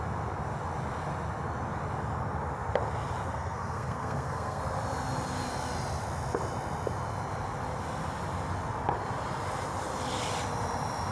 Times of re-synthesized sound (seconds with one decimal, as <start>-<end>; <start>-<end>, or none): 3.3-4.6